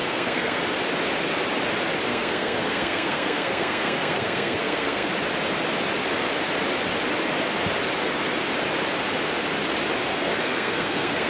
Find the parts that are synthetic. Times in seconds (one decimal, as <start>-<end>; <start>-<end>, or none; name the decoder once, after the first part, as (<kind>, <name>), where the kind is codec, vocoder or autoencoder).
0.0-0.6 (codec, SNAC); 2.1-5.1; 10.1-11.3